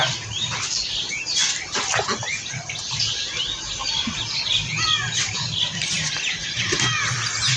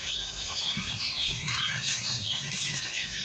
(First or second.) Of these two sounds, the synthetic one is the second